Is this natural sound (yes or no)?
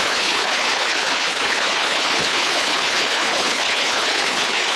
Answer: no